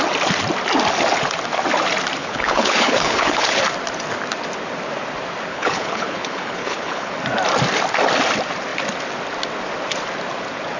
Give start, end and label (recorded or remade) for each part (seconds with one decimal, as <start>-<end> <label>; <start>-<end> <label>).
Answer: 0.0-2.2 recorded; 2.2-3.6 remade; 3.6-5.5 recorded; 5.5-7.1 remade; 7.1-10.8 recorded